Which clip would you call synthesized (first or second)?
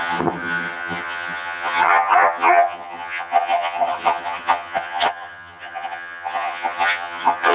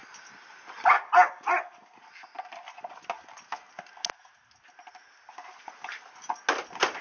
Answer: first